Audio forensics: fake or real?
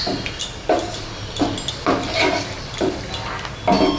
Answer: real